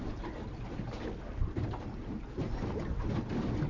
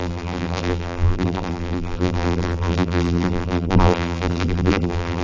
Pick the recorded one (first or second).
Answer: first